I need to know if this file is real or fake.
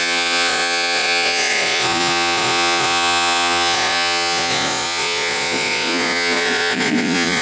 fake